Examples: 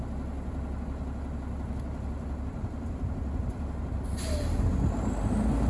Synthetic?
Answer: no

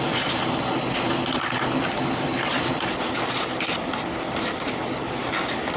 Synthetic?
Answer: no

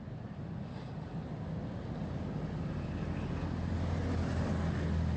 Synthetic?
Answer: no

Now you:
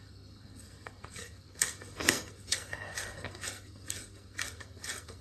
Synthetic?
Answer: yes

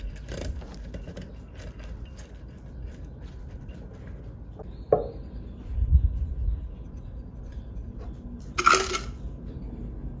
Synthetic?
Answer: no